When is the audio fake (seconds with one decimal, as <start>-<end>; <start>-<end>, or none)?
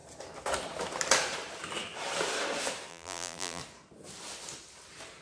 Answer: 2.9-3.6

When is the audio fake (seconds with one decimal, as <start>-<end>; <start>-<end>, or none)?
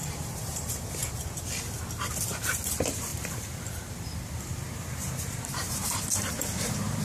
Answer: 0.0-1.0; 2.4-7.0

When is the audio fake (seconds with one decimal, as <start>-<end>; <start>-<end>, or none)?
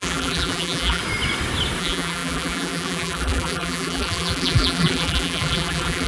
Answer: 0.0-1.0; 1.8-6.1